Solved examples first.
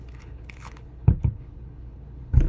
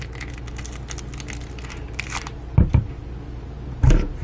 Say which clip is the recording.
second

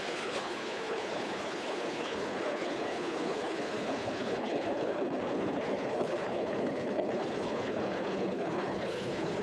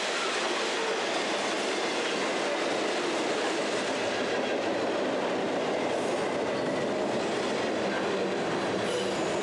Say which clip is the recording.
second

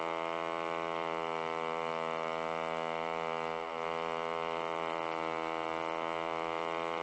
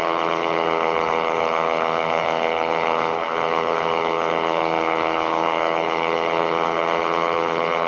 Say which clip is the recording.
first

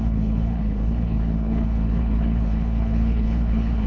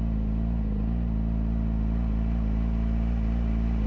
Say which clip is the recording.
second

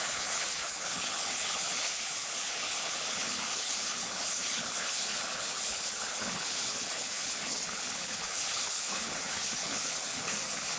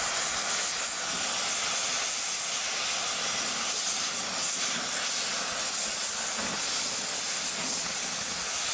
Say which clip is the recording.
second